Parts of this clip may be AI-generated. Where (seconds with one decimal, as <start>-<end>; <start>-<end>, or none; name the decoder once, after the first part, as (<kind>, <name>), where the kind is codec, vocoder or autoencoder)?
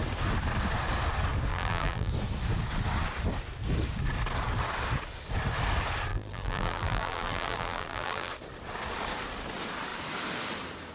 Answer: 1.5-2.1 (vocoder, BigVGAN v2); 6.1-8.3